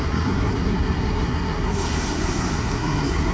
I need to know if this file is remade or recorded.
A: remade